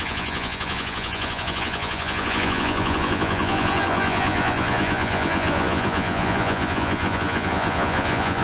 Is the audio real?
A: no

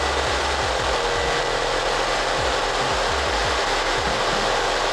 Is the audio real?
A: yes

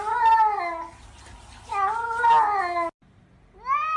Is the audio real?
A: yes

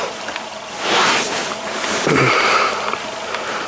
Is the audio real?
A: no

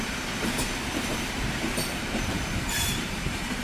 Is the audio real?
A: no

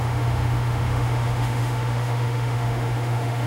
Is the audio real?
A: no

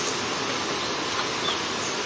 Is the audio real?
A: yes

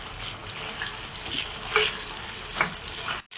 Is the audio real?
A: yes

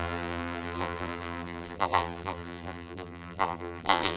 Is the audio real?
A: no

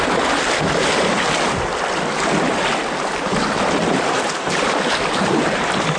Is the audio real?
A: yes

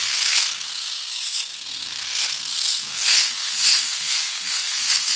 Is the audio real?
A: no